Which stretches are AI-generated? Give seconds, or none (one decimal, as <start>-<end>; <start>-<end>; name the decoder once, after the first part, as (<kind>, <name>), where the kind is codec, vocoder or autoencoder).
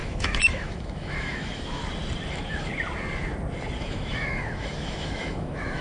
0.0-1.8 (autoencoder, DAC-VAE); 2.3-2.7; 3.8-5.8